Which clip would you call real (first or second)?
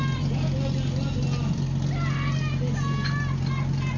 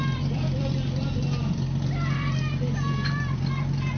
first